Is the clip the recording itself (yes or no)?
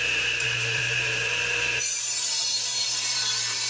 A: no